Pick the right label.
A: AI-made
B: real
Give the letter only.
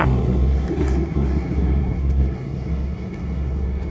A